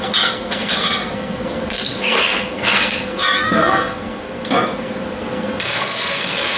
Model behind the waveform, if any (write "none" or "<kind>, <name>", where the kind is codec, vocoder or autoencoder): codec, SNAC